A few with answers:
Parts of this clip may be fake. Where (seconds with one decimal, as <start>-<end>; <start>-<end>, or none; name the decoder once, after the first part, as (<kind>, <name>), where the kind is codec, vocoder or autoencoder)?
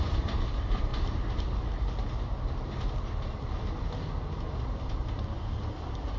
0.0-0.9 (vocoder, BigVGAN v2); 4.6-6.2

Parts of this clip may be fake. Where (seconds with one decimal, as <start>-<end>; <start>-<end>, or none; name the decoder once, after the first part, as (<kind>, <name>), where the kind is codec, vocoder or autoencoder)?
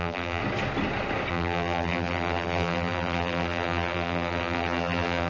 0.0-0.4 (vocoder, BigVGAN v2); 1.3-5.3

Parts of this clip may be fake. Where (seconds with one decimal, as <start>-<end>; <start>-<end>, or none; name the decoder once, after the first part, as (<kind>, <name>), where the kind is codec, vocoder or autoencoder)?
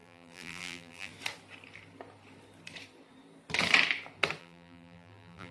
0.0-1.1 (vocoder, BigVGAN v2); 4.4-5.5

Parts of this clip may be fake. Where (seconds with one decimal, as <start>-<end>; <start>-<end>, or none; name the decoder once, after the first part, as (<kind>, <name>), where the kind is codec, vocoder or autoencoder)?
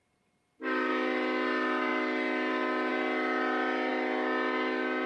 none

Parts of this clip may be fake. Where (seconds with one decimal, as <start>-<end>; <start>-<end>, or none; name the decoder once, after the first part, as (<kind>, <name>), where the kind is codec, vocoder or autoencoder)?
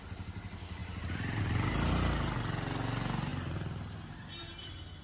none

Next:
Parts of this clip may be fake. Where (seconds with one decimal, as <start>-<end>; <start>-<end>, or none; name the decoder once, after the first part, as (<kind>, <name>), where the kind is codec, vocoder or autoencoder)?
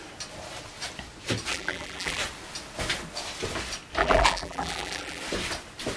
1.5-2.2 (vocoder, BigVGAN v2); 4.0-5.2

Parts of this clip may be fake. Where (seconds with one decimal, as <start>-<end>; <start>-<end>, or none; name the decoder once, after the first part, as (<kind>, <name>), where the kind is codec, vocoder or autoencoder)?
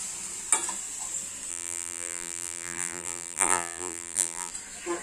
1.5-4.5 (vocoder, BigVGAN v2)